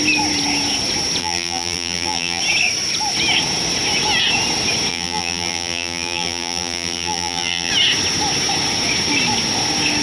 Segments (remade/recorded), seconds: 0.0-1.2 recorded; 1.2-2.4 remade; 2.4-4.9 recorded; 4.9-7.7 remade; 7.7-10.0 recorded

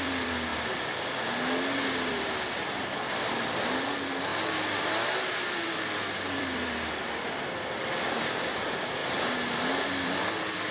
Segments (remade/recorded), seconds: 0.0-0.5 remade; 0.5-2.1 recorded; 2.1-4.3 remade; 4.3-5.3 recorded; 5.3-9.0 remade; 9.0-9.8 recorded; 9.8-10.7 remade

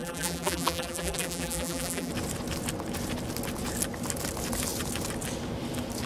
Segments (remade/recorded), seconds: 0.0-2.1 remade; 2.1-6.1 recorded

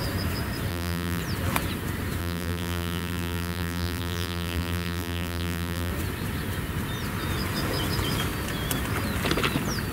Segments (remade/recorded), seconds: 0.0-0.7 recorded; 0.7-1.2 remade; 1.2-2.2 recorded; 2.2-5.9 remade; 5.9-9.9 recorded

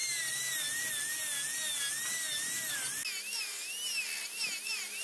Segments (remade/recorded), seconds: 0.0-0.9 remade; 0.9-5.0 recorded

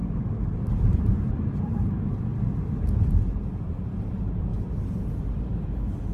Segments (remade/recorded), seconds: 0.0-2.3 remade; 2.3-3.2 recorded; 3.2-6.1 remade